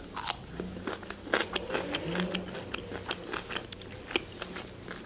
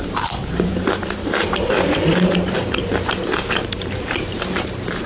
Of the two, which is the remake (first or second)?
second